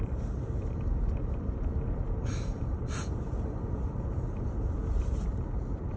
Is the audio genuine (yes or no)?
no